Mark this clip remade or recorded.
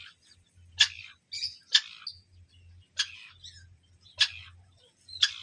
recorded